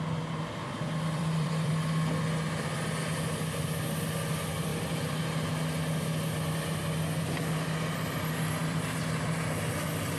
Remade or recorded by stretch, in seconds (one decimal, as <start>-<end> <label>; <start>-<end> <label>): 0.0-0.6 recorded; 0.6-1.7 remade; 1.7-4.7 recorded; 4.7-5.2 remade; 5.2-8.6 recorded; 8.6-9.4 remade; 9.4-10.2 recorded